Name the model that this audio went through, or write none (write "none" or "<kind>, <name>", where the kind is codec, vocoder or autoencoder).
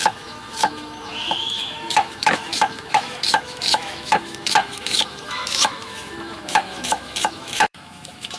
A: autoencoder, DAC-VAE